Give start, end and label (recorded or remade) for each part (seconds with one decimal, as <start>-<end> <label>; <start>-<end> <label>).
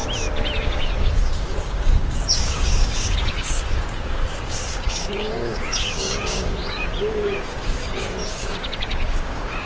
0.0-0.6 recorded; 0.6-9.7 remade